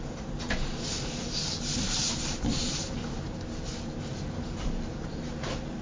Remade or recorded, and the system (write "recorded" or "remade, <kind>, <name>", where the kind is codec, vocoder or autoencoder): remade, vocoder, BigVGAN v2